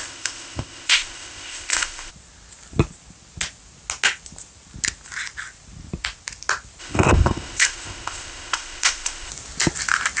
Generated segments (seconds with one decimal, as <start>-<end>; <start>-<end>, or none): 0.0-2.1; 6.8-9.3